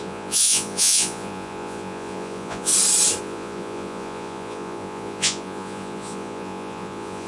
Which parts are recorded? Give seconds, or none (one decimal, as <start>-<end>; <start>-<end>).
2.7-3.2

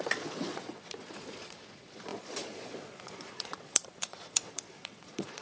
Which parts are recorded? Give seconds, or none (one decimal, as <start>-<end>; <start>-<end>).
none

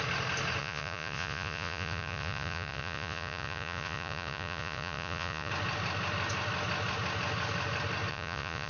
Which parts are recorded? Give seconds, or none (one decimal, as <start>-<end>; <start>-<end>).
0.0-0.6; 5.5-8.1

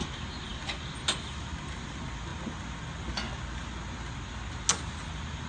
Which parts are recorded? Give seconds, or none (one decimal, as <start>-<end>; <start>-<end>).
0.0-5.5

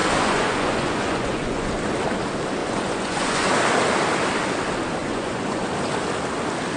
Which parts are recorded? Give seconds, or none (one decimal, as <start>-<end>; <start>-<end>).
1.7-2.6; 3.5-5.0; 5.7-6.8

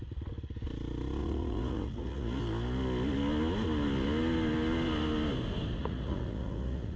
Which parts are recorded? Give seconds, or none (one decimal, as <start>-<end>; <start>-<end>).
0.0-1.2; 2.4-5.8

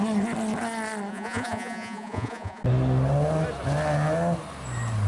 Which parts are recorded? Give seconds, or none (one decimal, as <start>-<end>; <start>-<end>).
0.0-1.1; 2.6-5.1